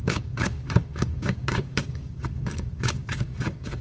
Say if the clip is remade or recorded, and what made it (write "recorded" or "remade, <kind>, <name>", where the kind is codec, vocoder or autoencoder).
remade, codec, DAC